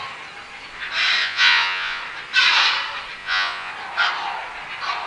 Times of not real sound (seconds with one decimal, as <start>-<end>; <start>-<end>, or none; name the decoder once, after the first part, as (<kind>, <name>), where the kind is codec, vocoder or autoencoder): 1.2-2.0 (vocoder, Vocos); 3.2-3.7